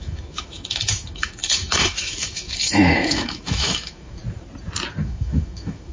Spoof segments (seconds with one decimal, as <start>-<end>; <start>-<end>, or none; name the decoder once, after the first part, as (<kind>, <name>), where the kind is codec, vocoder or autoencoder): 0.0-4.2 (autoencoder, DAC-VAE); 5.0-5.9